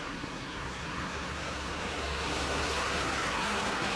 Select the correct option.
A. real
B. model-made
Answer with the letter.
B